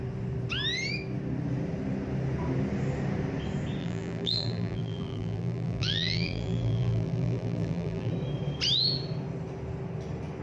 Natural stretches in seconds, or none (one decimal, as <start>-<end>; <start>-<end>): 0.0-3.8; 8.1-10.4